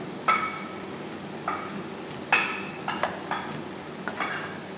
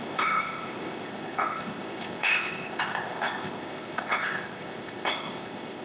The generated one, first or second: second